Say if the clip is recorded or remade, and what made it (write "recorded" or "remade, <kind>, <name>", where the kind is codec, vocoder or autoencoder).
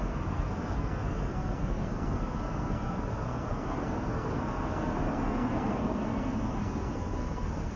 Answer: remade, codec, SNAC